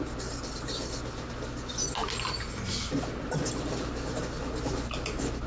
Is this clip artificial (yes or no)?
no